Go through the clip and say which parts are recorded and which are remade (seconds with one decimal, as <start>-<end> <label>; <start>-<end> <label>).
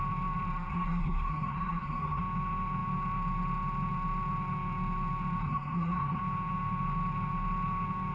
0.0-0.7 recorded; 0.7-2.2 remade; 2.2-5.4 recorded; 5.4-6.2 remade; 6.2-8.1 recorded